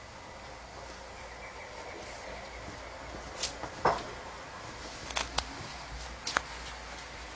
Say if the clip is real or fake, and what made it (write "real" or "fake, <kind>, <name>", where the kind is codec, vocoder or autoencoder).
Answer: real